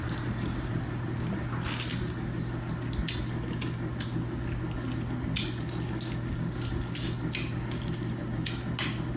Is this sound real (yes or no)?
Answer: yes